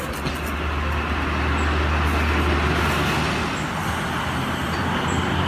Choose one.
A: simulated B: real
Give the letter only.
B